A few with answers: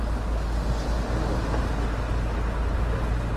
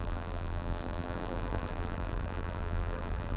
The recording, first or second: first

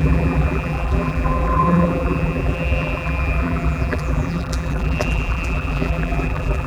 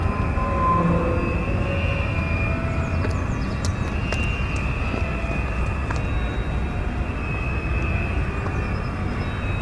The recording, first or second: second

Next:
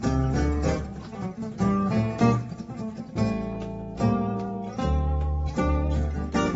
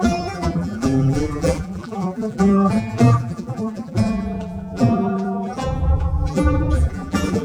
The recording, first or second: first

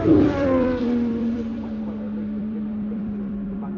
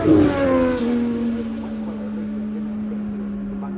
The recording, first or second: second